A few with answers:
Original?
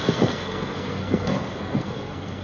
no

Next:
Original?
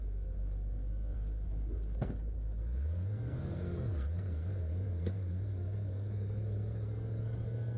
no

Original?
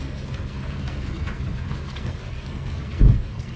no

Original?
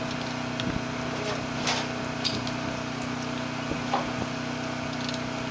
yes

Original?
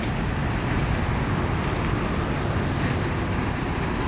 yes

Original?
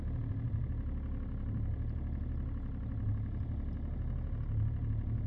yes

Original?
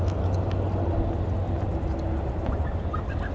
yes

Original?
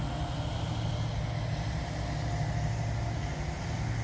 yes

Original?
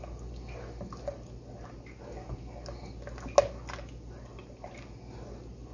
yes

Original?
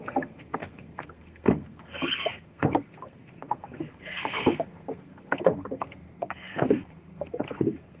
no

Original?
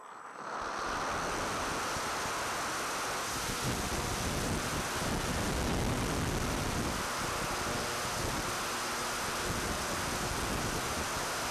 yes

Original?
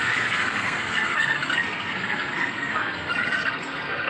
no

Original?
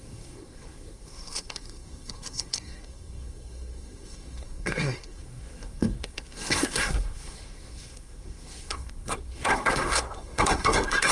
no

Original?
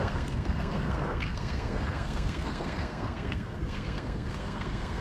no